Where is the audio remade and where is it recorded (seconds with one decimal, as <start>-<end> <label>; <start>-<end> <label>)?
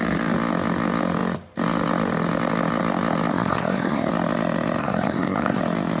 0.0-3.3 recorded; 3.3-4.1 remade; 4.1-4.8 recorded; 4.8-5.6 remade; 5.6-6.0 recorded